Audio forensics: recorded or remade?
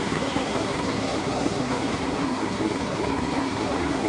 remade